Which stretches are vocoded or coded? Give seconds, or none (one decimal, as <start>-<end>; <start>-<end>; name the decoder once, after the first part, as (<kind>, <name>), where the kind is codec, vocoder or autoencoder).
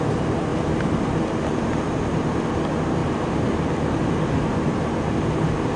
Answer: none